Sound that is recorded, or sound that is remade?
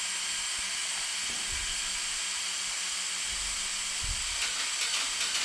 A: recorded